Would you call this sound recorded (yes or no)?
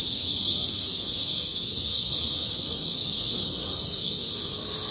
no